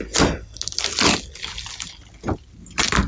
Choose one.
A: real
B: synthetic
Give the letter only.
A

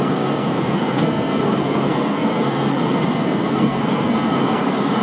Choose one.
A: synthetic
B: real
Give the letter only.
A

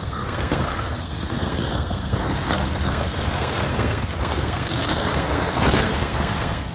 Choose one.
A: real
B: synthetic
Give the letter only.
B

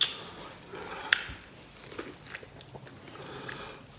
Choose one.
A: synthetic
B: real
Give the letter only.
B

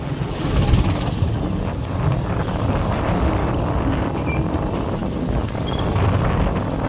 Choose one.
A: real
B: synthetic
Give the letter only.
A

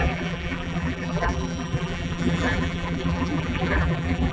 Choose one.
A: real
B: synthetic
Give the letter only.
B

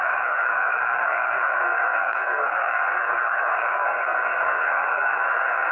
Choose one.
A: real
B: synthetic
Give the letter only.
B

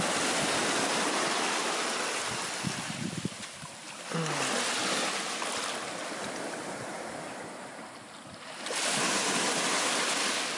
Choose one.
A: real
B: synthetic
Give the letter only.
A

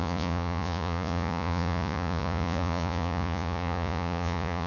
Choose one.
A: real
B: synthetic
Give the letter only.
B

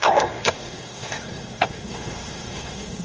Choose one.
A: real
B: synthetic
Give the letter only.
B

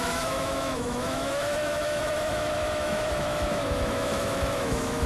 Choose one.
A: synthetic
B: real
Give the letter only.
A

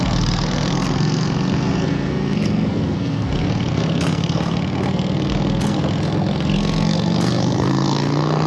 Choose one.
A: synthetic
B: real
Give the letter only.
A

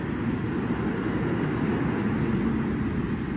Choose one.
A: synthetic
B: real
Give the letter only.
B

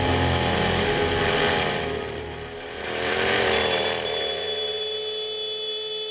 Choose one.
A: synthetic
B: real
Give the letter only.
A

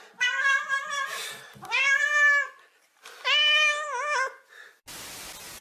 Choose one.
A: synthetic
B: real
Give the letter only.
B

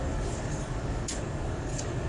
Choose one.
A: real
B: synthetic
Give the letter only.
B